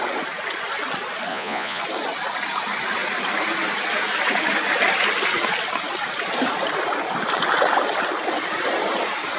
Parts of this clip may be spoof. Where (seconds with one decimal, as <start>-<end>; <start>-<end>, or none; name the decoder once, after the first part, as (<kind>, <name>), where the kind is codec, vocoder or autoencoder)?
1.3-1.8 (vocoder, Vocos)